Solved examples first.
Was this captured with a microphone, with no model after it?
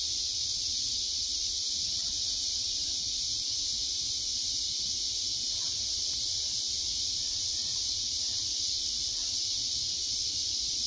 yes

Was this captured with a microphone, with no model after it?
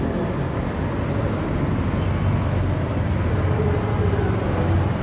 yes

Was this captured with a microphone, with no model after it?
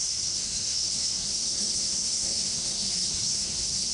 no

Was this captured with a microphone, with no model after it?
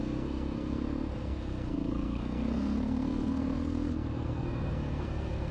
no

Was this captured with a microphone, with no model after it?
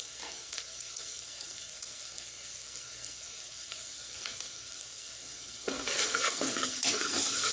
no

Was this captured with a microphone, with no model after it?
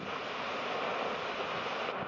yes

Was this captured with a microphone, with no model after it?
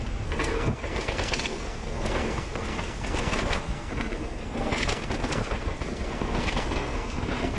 no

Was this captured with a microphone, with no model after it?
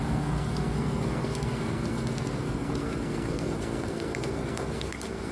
no